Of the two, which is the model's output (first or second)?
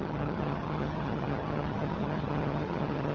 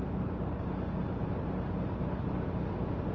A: first